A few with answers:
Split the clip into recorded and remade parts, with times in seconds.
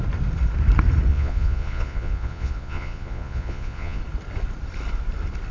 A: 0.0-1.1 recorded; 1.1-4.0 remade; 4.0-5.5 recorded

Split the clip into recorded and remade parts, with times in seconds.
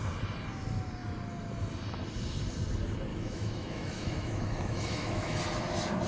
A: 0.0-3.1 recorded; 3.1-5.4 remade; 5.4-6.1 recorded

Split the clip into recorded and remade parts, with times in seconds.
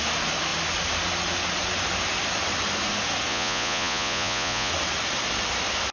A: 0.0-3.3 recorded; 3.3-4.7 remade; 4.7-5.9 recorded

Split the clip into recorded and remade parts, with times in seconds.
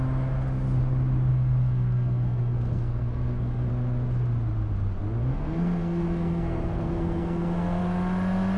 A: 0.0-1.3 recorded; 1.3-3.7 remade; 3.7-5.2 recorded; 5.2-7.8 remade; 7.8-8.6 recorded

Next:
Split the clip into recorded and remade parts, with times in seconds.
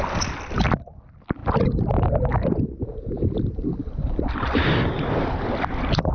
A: 0.0-6.1 recorded